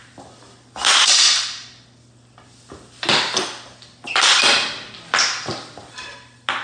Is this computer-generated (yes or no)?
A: no